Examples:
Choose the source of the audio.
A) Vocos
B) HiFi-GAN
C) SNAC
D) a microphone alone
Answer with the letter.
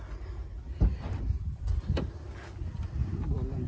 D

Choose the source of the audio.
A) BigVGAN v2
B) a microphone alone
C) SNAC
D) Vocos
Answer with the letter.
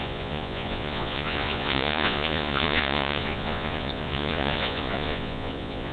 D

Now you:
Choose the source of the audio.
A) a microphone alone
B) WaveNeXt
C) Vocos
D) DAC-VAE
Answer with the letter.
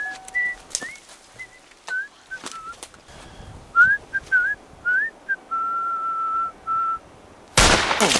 A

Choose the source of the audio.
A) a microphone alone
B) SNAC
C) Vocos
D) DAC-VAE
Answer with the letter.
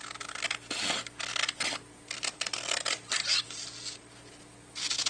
A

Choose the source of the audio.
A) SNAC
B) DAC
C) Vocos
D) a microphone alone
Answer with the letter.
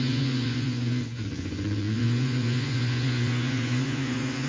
C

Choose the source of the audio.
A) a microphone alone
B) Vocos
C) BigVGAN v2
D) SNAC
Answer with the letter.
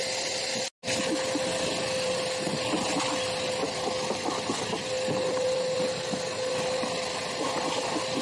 A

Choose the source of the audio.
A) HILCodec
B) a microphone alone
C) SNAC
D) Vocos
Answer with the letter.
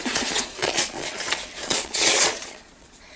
D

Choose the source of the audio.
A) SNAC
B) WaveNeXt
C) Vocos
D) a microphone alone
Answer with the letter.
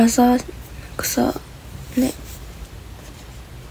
D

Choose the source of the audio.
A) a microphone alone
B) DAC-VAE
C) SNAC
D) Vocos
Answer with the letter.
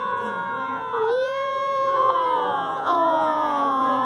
D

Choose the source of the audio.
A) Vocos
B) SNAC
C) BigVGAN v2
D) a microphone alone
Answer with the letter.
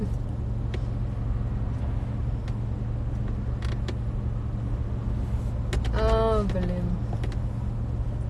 D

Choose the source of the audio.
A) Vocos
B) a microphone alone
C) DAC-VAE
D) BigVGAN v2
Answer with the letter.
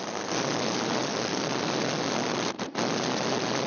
B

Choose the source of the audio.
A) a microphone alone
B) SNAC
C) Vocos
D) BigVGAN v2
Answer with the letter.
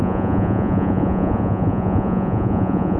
C